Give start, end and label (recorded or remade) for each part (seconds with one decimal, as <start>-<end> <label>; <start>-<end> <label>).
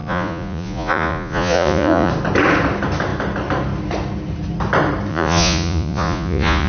0.0-2.1 remade; 2.1-5.1 recorded; 5.1-6.7 remade